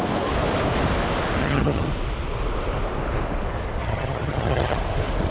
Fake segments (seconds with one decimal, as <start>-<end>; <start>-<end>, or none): 1.4-1.9; 3.8-4.8